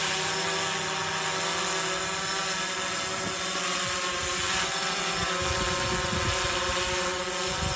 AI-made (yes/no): no